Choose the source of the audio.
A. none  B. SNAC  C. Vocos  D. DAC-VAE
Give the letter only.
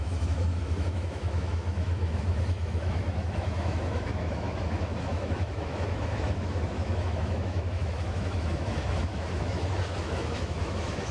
D